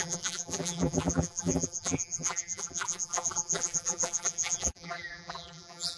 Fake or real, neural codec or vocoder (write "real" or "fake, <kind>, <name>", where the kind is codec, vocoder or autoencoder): fake, vocoder, BigVGAN v2